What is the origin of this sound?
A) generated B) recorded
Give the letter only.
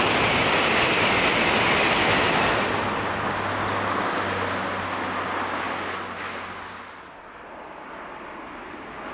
B